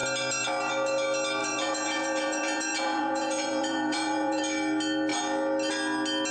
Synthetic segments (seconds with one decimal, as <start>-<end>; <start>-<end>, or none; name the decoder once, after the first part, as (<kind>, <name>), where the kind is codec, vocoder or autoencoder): 1.4-4.4 (vocoder, Vocos)